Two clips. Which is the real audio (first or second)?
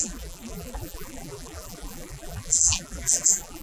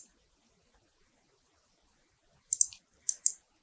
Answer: second